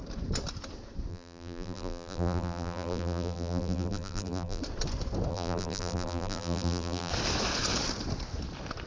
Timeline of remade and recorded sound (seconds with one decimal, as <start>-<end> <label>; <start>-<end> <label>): 0.0-1.1 recorded; 1.1-4.6 remade; 4.6-5.3 recorded; 5.3-7.1 remade; 7.1-8.9 recorded